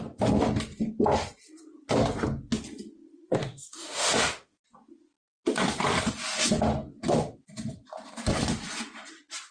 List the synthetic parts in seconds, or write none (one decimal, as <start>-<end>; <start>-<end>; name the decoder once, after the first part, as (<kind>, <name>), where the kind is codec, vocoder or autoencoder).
3.4-4.6 (autoencoder, DAC-VAE)